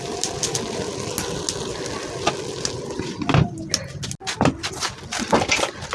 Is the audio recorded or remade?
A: recorded